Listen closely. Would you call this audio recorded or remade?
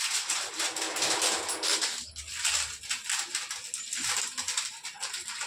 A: recorded